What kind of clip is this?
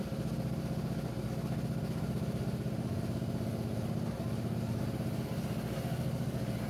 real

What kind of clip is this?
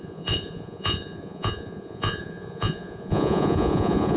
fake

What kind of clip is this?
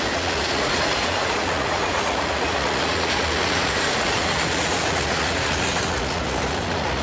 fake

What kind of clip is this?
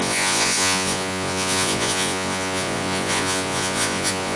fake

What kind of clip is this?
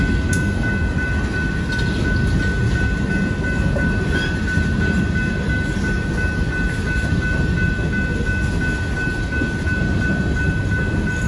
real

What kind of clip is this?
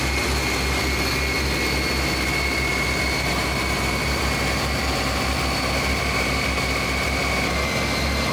real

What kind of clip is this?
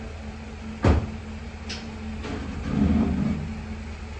real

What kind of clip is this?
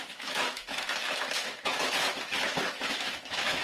fake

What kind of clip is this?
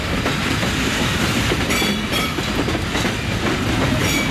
fake